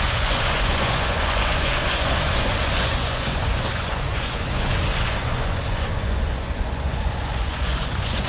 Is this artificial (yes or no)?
yes